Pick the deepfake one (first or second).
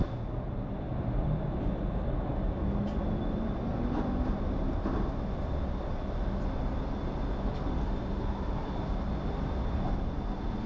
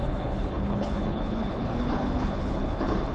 second